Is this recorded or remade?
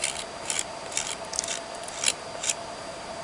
remade